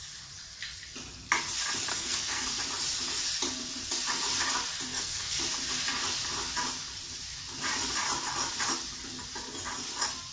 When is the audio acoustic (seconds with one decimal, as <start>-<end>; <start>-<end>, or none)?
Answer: 0.0-1.9; 2.6-4.9; 5.4-10.3